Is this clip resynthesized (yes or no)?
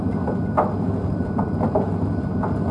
no